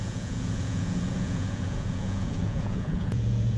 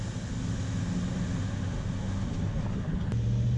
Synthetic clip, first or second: first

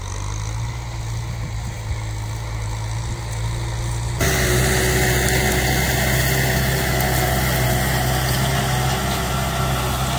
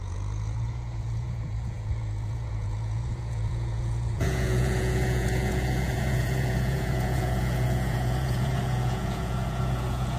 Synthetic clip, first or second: second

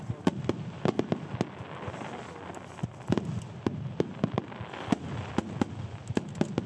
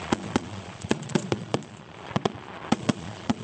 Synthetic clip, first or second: second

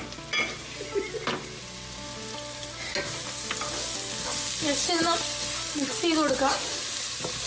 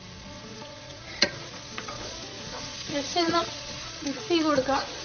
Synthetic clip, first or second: second